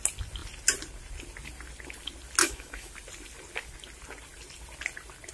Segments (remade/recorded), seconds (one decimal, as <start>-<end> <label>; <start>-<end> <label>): 0.0-2.4 recorded; 2.4-2.9 remade; 2.9-5.3 recorded

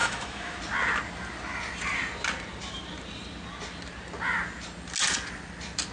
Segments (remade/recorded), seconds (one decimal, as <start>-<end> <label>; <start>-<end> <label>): 0.0-0.6 remade; 0.6-5.9 recorded

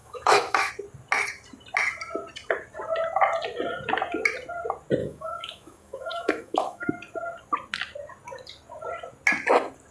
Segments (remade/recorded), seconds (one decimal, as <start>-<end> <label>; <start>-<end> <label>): 0.0-0.7 remade; 0.7-5.0 recorded; 5.0-6.9 remade; 6.9-9.9 recorded

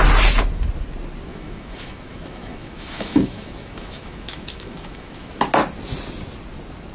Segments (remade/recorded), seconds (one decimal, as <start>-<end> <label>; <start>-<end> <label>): 0.0-1.3 recorded; 1.3-5.4 remade; 5.4-6.9 recorded

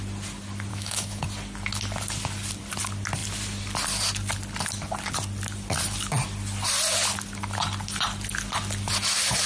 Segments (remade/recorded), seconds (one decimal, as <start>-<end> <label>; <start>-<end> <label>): 0.0-0.7 recorded; 0.7-1.2 remade; 1.2-9.5 recorded

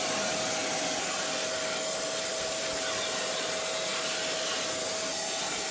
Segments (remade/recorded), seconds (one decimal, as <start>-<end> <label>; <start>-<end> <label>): 0.0-5.7 recorded

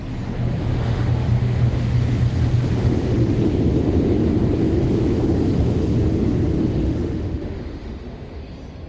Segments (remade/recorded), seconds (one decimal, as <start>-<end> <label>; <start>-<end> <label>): 0.0-0.7 recorded; 0.7-2.0 remade; 2.0-2.8 recorded; 2.8-3.5 remade; 3.5-6.8 recorded; 6.8-8.4 remade; 8.4-8.9 recorded

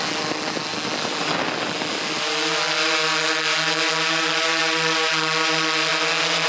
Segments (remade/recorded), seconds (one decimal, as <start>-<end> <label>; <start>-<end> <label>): 0.0-6.5 recorded